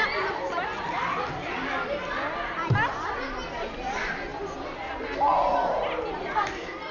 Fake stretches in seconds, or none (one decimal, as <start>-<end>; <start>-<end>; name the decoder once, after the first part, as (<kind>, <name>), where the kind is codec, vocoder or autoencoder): none